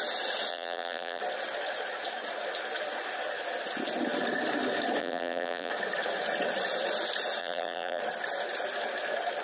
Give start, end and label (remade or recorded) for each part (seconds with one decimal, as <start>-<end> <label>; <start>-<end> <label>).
0.0-0.5 recorded; 0.5-1.2 remade; 1.2-5.0 recorded; 5.0-5.7 remade; 5.7-7.4 recorded; 7.4-8.0 remade; 8.0-9.4 recorded